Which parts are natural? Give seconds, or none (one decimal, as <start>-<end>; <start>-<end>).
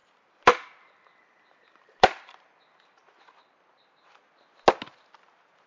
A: 2.6-5.7